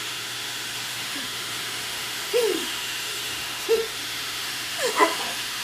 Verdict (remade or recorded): remade